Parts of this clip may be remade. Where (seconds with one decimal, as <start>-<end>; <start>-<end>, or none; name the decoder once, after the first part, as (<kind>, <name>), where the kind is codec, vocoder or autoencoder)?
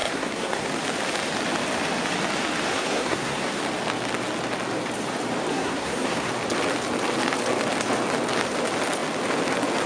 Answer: 0.0-0.7 (codec, SNAC); 2.7-3.6; 5.5-6.3